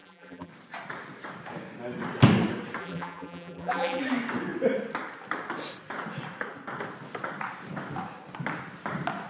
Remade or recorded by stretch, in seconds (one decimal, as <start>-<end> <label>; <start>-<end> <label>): 0.0-0.5 remade; 0.5-2.8 recorded; 2.8-4.0 remade; 4.0-9.3 recorded

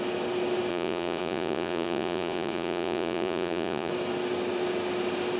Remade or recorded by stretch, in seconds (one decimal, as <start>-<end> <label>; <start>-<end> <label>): 0.0-0.7 recorded; 0.7-3.9 remade; 3.9-5.4 recorded

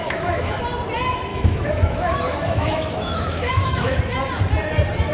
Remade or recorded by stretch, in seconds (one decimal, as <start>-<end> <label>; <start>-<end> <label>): 0.0-0.6 remade; 0.6-1.3 recorded; 1.3-4.0 remade; 4.0-5.1 recorded

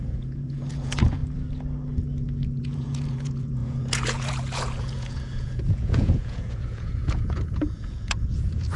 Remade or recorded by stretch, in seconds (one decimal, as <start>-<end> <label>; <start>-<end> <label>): 0.0-1.2 remade; 1.2-2.6 recorded; 2.6-8.8 remade